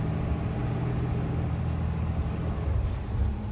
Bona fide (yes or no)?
yes